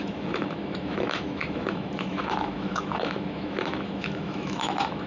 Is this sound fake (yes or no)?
yes